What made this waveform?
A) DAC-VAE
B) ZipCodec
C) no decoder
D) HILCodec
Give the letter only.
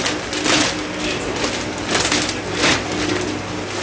C